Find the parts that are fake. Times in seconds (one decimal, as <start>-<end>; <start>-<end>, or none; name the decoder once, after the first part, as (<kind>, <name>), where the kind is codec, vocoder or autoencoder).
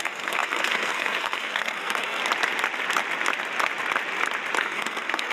0.0-2.2 (codec, SNAC); 4.6-5.3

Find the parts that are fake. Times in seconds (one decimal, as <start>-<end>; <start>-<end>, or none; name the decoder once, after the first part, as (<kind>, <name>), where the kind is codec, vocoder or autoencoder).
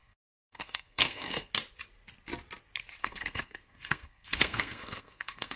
0.0-1.5 (codec, SNAC); 3.0-5.6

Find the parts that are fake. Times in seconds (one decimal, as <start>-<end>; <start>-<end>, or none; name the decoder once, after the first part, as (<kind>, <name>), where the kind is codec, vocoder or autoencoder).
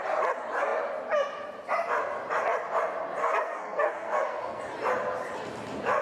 3.2-4.6 (codec, SNAC)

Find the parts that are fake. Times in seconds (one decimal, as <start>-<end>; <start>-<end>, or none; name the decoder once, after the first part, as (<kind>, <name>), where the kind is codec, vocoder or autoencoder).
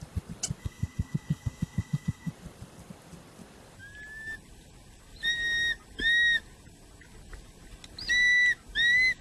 0.6-2.3 (codec, SNAC)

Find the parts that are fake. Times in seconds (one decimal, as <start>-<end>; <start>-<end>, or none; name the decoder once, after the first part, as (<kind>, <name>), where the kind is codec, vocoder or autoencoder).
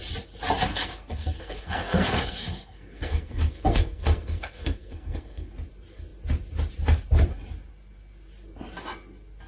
0.7-5.5 (codec, SNAC)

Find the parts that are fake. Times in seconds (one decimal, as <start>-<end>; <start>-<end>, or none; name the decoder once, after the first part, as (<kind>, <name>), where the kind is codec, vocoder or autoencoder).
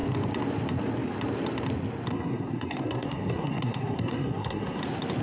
2.1-4.8 (codec, SNAC)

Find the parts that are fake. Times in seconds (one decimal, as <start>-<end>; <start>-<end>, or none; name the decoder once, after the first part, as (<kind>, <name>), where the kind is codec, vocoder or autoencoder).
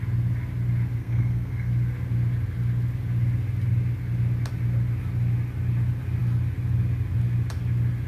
1.0-1.7 (codec, SNAC)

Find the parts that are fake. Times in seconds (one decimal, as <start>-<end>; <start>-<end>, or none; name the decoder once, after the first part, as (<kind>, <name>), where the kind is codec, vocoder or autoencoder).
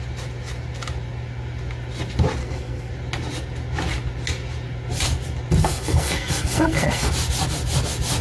2.4-2.9 (codec, SNAC); 5.6-7.1